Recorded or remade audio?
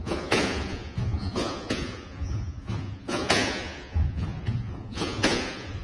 remade